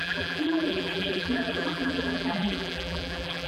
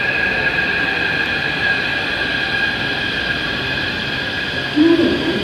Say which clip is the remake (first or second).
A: first